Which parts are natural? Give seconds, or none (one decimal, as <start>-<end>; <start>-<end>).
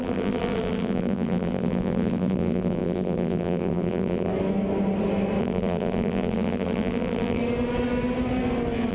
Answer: 4.3-5.4; 7.4-8.9